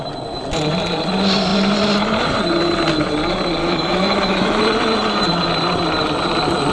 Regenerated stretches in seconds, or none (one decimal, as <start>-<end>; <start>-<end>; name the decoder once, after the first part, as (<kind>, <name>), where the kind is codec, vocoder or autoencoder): 3.6-4.6 (autoencoder, DAC-VAE)